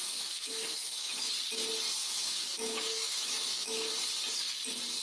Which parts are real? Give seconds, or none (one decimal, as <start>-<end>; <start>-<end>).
1.3-2.0; 3.9-5.0